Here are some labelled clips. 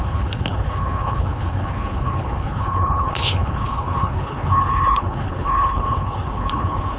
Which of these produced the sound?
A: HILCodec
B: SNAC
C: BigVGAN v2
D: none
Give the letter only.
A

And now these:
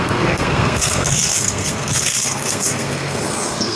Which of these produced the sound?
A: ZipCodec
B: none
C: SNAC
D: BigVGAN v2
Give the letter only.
C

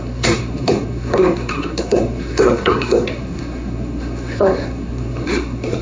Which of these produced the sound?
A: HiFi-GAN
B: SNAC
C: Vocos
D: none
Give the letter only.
B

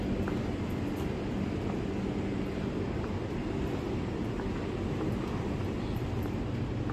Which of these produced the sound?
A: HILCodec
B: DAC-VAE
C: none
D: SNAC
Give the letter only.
C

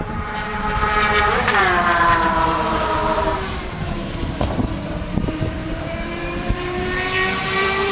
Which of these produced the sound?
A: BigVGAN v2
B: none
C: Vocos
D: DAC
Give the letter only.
A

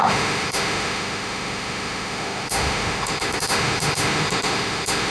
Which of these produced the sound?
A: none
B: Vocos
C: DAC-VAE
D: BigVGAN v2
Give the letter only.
C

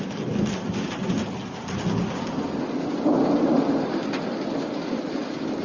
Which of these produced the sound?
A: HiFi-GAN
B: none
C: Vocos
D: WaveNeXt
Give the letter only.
B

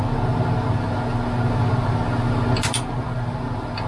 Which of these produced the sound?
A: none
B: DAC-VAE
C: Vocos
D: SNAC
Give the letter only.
A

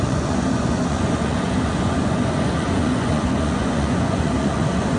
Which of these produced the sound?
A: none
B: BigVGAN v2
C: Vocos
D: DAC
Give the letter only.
C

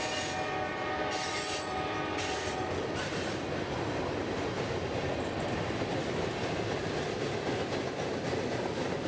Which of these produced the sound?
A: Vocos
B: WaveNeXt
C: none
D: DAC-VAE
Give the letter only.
C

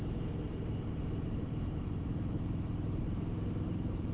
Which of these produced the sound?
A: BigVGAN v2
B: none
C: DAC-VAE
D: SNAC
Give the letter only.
A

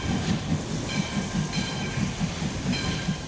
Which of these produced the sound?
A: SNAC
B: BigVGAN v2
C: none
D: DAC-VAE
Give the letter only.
C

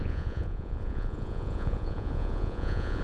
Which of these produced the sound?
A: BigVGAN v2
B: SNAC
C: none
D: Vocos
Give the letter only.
D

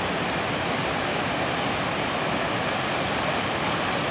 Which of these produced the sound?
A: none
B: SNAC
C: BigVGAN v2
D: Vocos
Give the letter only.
A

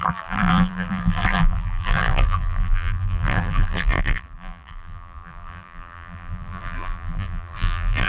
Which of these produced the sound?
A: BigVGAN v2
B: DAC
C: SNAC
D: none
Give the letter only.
A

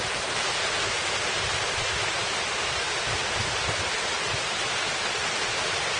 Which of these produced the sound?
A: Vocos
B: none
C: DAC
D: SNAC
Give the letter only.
B